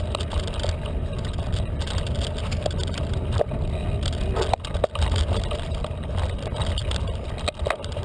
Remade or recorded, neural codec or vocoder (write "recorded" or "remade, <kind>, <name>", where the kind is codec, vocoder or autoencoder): recorded